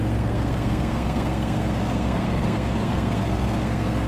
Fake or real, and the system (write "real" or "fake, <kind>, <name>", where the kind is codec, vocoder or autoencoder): fake, codec, SNAC